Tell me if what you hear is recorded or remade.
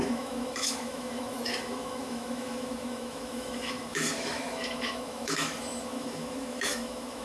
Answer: remade